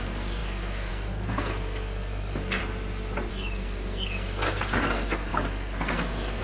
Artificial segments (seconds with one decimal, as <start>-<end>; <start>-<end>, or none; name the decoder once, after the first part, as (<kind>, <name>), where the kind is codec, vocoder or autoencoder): 0.0-2.6 (codec, SNAC); 3.3-6.4